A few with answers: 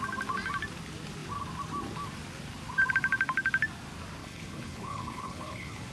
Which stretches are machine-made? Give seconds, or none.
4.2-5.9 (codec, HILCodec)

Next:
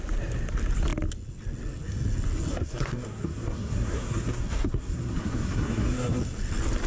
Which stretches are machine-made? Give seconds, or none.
2.5-6.2 (codec, SNAC)

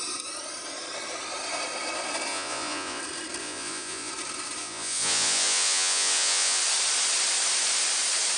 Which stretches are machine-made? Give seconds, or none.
2.3-3.0 (vocoder, Vocos); 3.4-4.1; 4.6-6.6

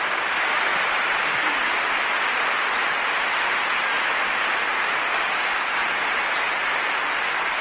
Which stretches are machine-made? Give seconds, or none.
0.7-3.4 (vocoder, BigVGAN v2); 5.5-6.2

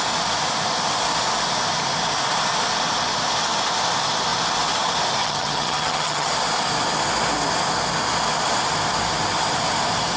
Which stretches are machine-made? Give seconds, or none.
5.2-6.3 (vocoder, HiFi-GAN)